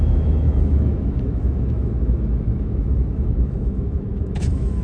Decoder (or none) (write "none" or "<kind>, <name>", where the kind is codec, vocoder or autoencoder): autoencoder, DAC-VAE